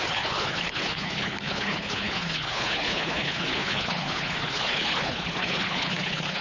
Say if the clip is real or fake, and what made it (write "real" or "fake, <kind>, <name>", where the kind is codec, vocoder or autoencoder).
fake, codec, HILCodec